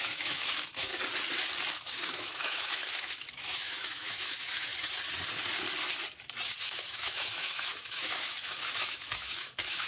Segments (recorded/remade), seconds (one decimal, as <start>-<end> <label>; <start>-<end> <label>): 0.0-0.9 remade; 0.9-1.7 recorded; 1.7-4.7 remade; 4.7-6.6 recorded; 6.6-9.9 remade